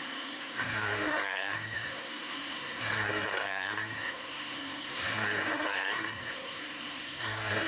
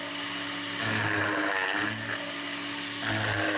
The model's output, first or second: first